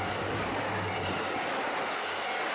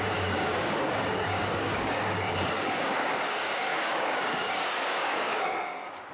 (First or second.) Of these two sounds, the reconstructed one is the second